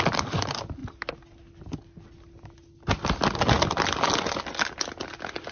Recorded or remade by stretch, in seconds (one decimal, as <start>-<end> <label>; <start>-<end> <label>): 0.0-5.5 recorded